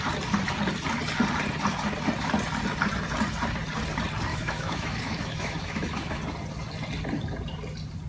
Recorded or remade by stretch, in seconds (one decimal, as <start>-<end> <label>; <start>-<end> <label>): 0.0-4.3 recorded; 4.3-6.2 remade; 6.2-8.1 recorded

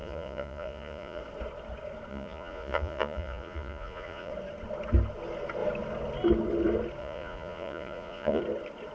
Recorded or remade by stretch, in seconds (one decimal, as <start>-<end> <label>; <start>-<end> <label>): 0.0-1.2 remade; 1.2-2.1 recorded; 2.1-4.3 remade; 4.3-7.0 recorded; 7.0-8.4 remade; 8.4-8.9 recorded

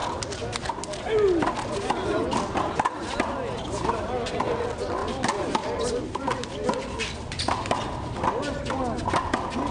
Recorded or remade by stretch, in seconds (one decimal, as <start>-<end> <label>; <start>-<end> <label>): 0.0-9.7 recorded